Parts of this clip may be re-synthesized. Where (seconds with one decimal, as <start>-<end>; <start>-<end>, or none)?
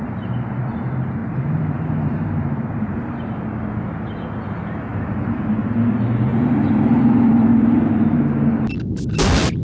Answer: 1.2-3.4; 4.9-5.5; 6.3-7.9